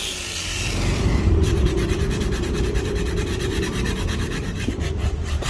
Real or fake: fake